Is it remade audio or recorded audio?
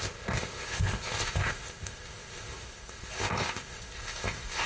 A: remade